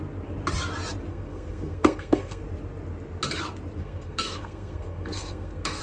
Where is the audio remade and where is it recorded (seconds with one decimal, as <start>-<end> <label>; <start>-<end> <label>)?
0.0-1.1 recorded; 1.1-2.4 remade; 2.4-3.8 recorded; 3.8-5.8 remade